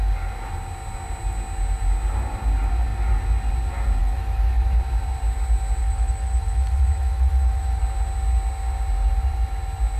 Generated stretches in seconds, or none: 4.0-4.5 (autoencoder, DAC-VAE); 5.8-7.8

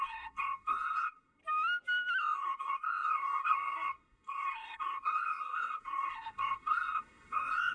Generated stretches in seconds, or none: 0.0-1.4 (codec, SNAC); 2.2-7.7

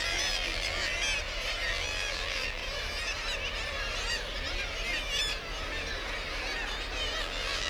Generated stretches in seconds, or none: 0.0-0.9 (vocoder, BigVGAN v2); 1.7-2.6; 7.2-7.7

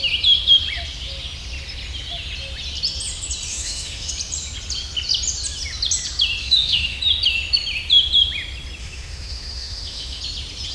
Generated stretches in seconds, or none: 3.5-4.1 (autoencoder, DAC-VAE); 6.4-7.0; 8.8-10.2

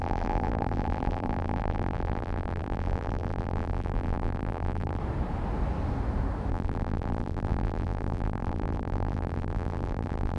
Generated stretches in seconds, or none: 0.0-5.0 (vocoder, BigVGAN v2); 6.5-10.4

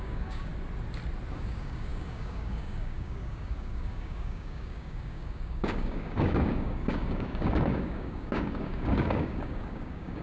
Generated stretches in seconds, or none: 0.0-0.5 (codec, DAC); 1.3-10.2